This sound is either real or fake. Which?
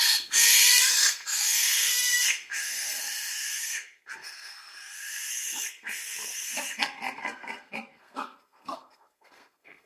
fake